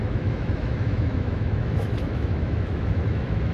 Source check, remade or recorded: remade